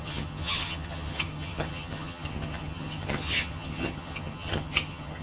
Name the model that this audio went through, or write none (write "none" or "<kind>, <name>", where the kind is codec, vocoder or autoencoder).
vocoder, HiFi-GAN